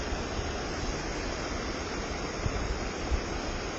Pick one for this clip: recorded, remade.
recorded